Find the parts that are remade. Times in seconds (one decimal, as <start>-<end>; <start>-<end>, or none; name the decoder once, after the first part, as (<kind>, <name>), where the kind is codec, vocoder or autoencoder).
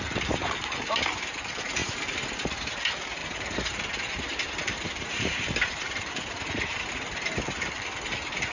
1.8-2.4 (vocoder, BigVGAN v2); 3.2-6.9